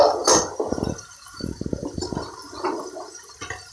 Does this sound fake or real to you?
fake